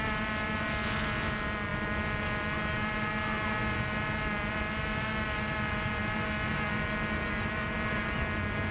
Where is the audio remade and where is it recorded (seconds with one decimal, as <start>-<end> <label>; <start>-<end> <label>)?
0.0-8.7 recorded